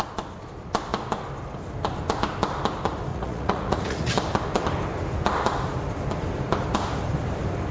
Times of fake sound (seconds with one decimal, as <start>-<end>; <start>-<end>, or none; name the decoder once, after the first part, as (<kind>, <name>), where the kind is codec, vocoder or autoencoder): 3.1-4.1 (vocoder, Vocos)